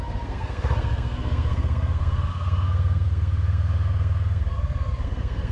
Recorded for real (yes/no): no